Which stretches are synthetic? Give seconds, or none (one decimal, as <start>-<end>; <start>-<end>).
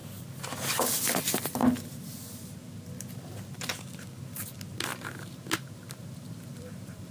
1.2-1.6; 5.9-7.1